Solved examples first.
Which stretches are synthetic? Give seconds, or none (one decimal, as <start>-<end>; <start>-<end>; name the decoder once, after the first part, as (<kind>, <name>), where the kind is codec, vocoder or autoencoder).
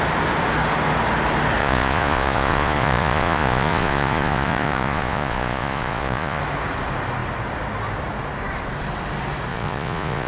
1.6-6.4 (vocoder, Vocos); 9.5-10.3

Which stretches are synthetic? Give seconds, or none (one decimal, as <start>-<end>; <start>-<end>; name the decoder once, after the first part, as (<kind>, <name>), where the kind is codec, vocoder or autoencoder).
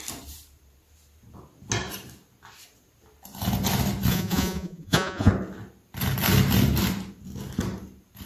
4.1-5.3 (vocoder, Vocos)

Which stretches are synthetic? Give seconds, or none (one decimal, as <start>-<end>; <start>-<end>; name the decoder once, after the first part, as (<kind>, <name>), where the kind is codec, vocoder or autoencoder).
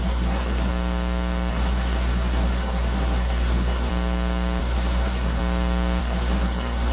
0.0-0.7 (codec, SNAC); 1.5-3.9; 4.6-5.4; 6.0-6.9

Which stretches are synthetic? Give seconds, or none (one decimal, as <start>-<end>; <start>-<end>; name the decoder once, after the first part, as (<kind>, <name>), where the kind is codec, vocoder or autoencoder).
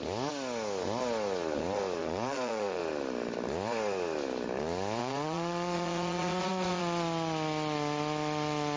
2.0-2.8 (vocoder, Vocos); 5.0-6.8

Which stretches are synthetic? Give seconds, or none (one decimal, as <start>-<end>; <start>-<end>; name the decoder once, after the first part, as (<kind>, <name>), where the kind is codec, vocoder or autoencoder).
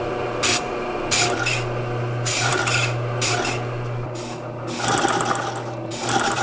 none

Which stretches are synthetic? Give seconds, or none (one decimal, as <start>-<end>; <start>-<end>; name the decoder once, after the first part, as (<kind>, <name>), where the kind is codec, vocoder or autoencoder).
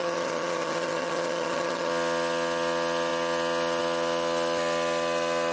0.0-1.9 (vocoder, HiFi-GAN)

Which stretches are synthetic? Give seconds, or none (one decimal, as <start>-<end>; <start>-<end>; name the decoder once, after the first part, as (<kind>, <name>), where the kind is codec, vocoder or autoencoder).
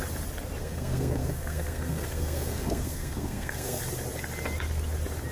0.6-3.8 (codec, SNAC)